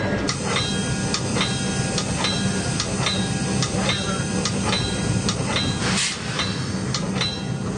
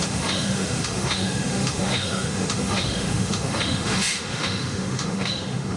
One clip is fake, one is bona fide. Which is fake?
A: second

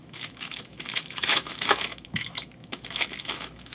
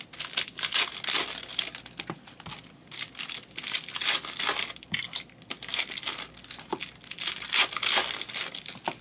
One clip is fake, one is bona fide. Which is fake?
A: first